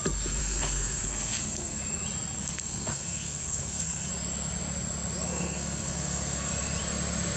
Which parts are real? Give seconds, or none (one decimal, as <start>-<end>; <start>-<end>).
0.0-0.4; 1.8-2.4; 4.1-5.3; 6.5-7.4